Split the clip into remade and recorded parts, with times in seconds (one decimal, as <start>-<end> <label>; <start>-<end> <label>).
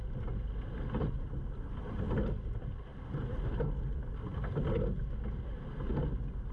0.0-6.5 recorded